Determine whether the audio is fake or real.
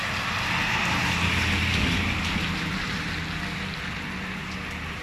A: real